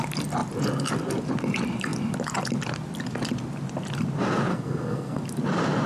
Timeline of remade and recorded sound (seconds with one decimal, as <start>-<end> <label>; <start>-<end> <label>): 0.0-4.5 recorded; 4.5-5.2 remade; 5.2-5.9 recorded